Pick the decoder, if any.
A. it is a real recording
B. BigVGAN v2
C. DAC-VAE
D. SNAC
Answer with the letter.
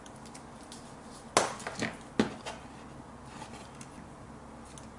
A